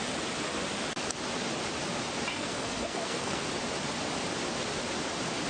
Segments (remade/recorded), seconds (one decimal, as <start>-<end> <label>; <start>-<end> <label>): 0.0-2.3 recorded; 2.3-3.5 remade; 3.5-5.5 recorded